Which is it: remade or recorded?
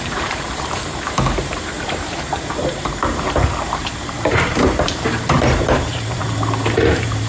remade